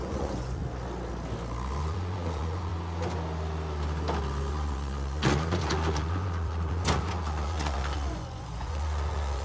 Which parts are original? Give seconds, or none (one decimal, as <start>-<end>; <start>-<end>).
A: 0.6-1.8; 2.7-4.5